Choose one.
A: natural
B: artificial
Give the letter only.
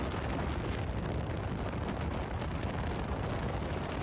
A